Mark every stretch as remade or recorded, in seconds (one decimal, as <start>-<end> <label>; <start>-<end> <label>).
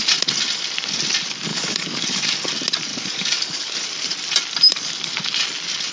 0.0-1.5 recorded; 1.5-2.5 remade; 2.5-2.9 recorded; 2.9-3.8 remade; 3.8-5.9 recorded